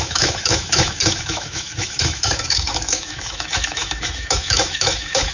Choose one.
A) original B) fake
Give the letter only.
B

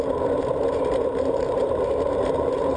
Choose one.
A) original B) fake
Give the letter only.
B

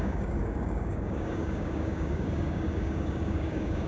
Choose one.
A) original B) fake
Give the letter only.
B